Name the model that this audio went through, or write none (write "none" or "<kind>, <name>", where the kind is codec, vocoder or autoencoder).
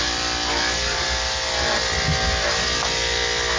none